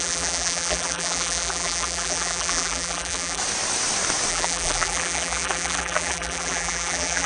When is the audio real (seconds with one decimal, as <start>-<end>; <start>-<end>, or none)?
3.4-4.3